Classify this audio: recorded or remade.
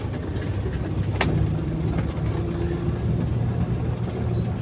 recorded